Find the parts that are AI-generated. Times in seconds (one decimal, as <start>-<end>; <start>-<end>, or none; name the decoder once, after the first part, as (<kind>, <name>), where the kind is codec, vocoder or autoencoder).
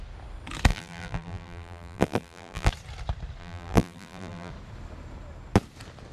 0.7-2.7 (vocoder, BigVGAN v2); 3.4-4.5